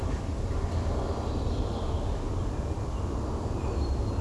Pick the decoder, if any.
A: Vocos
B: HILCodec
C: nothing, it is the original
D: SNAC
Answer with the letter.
C